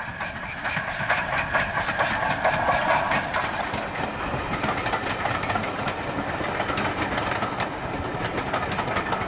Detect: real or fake real